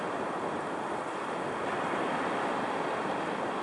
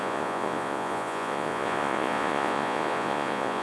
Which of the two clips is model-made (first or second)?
second